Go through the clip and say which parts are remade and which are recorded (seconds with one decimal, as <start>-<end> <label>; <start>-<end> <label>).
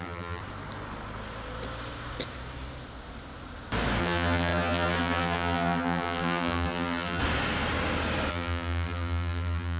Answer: 0.0-0.4 remade; 0.4-4.0 recorded; 4.0-7.2 remade; 7.2-8.3 recorded; 8.3-9.8 remade